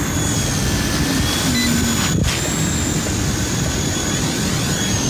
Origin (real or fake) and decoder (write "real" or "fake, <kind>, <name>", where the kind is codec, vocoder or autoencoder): real